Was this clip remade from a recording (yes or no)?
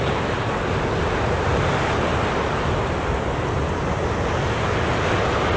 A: no